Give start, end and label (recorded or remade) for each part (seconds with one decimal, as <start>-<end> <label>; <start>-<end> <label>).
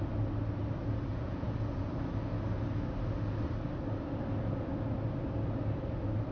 0.0-1.1 recorded; 1.1-2.0 remade; 2.0-6.3 recorded